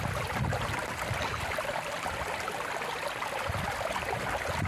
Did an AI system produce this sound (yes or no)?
no